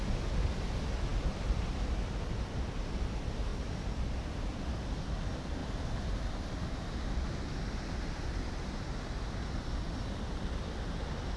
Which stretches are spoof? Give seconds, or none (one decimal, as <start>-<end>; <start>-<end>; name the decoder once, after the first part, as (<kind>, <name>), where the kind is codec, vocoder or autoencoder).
5.6-6.1 (vocoder, BigVGAN v2)